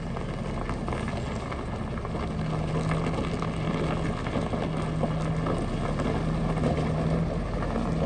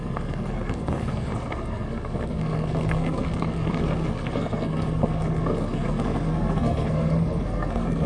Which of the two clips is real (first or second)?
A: first